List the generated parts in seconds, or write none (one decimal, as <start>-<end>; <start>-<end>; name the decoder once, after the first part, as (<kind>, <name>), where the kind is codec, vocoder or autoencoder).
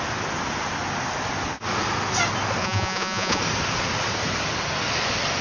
2.6-3.4 (vocoder, Vocos)